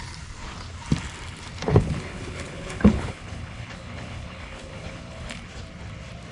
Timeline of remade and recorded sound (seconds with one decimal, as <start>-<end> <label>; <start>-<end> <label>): 0.0-1.6 recorded; 1.6-5.4 remade; 5.4-6.3 recorded